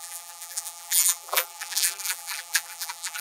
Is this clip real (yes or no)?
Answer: no